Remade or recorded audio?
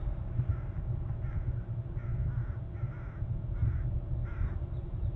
recorded